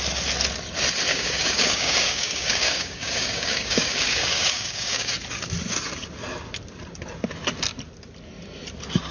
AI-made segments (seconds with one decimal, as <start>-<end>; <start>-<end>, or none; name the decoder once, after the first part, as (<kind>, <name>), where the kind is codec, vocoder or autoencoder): 1.1-5.1 (codec, DAC)